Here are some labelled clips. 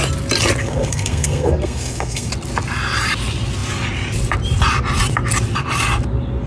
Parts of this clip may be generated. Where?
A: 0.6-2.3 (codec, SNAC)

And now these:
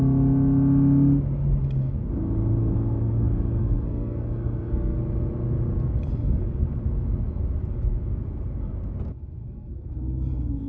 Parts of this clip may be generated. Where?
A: 2.6-5.0 (codec, SNAC); 6.2-6.7; 9.4-10.7

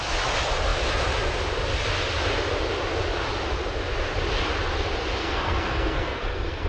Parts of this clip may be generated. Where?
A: 5.2-6.7 (codec, SNAC)

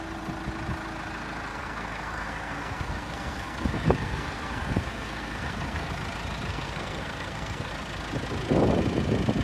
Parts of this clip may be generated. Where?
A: 1.5-5.9 (codec, SNAC); 6.5-7.7

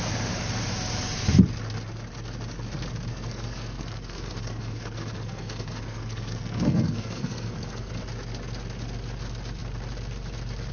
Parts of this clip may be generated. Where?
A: 3.1-7.9 (codec, SNAC)

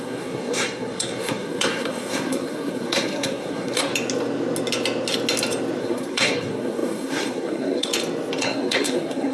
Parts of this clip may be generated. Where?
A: 0.0-3.9 (codec, SNAC); 5.8-7.9; 8.4-9.3